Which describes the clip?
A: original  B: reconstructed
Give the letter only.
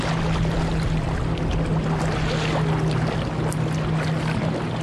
A